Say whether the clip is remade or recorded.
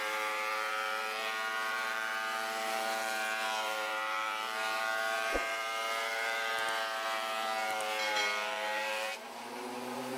remade